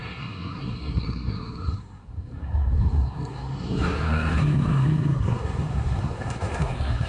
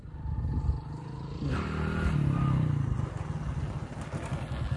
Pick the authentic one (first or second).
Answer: second